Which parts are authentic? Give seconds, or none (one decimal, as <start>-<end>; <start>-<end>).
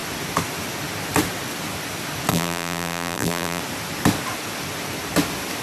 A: 0.0-2.3; 3.6-5.6